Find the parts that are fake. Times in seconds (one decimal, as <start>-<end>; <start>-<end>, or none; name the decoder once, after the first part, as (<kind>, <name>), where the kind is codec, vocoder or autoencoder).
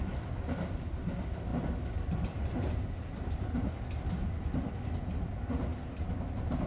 none